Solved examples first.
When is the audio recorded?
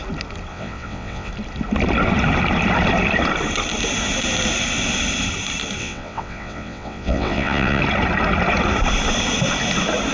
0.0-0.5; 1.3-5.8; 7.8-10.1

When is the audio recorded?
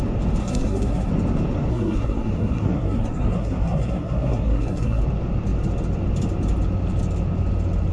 0.0-0.4; 1.1-1.7; 5.0-7.9